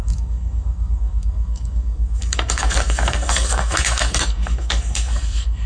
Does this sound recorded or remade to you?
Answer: remade